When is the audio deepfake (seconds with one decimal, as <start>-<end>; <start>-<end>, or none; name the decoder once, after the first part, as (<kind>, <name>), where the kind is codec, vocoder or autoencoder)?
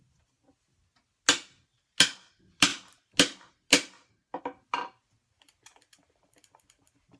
none